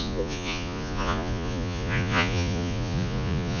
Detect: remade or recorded remade